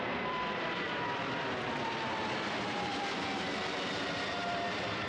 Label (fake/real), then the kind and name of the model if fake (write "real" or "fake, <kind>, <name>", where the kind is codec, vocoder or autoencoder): fake, vocoder, BigVGAN v2